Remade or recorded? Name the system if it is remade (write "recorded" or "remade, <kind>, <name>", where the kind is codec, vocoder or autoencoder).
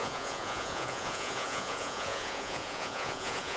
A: remade, vocoder, Vocos